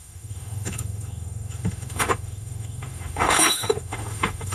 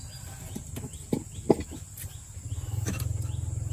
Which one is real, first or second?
second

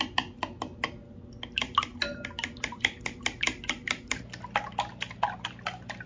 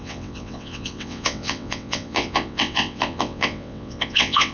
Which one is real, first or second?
first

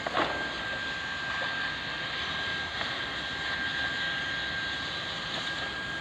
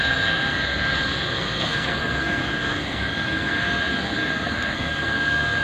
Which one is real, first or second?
first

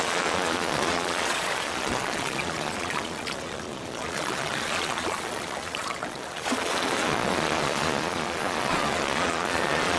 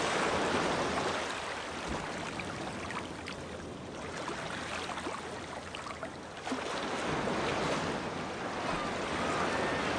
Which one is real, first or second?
second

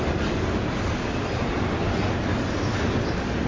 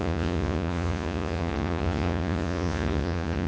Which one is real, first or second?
first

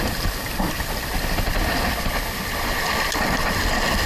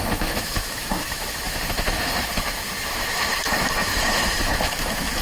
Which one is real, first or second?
first